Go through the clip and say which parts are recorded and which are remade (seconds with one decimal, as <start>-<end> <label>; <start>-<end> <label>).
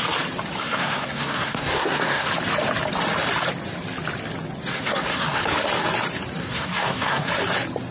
0.0-0.6 recorded; 0.6-2.3 remade; 2.3-4.7 recorded; 4.7-5.4 remade; 5.4-6.4 recorded; 6.4-7.3 remade; 7.3-7.9 recorded